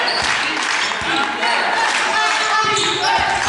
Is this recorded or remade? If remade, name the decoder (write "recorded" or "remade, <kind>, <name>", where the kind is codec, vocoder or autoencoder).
recorded